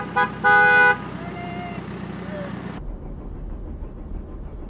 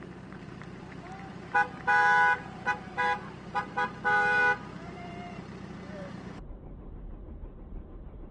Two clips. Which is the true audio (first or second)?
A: first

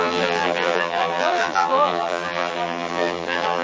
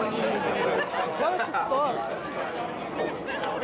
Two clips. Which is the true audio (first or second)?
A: second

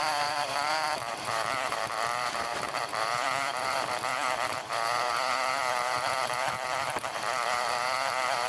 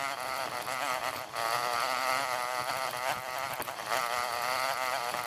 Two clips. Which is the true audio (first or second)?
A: second